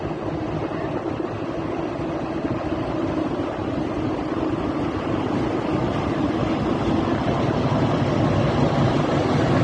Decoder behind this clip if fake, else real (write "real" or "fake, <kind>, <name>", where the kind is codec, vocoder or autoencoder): real